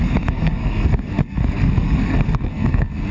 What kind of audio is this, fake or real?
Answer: fake